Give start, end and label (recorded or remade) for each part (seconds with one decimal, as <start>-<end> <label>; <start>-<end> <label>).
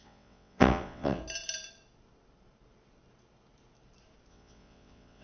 0.0-1.2 remade; 1.2-4.3 recorded; 4.3-5.2 remade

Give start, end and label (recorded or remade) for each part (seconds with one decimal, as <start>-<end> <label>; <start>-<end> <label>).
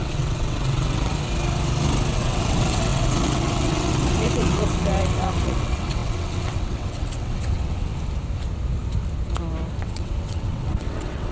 0.0-1.1 remade; 1.1-2.1 recorded; 2.1-7.9 remade; 7.9-9.8 recorded; 9.8-11.3 remade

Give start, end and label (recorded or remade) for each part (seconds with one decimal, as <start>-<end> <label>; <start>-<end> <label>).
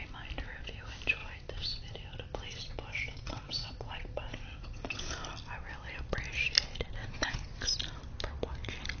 0.0-1.2 recorded; 1.2-5.0 remade; 5.0-7.0 recorded; 7.0-7.6 remade; 7.6-9.0 recorded